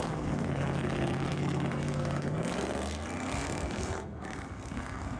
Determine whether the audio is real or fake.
fake